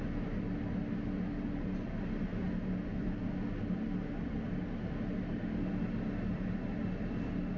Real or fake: real